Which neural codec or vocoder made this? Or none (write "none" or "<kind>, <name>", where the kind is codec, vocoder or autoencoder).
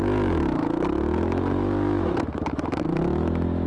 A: autoencoder, DAC-VAE